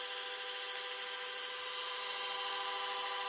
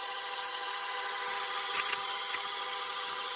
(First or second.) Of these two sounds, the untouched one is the first